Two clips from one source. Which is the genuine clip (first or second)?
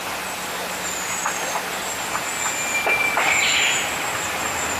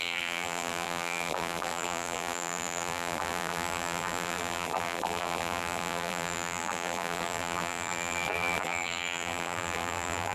first